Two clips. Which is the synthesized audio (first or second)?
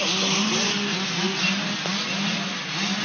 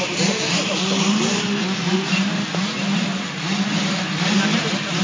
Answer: second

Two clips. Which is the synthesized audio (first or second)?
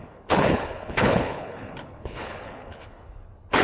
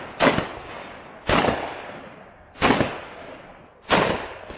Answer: first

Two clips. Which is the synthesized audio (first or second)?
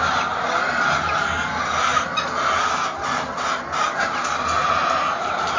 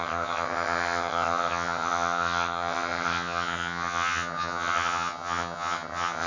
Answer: second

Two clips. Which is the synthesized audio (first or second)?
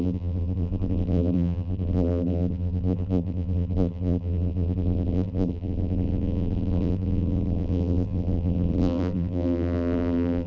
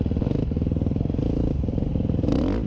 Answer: first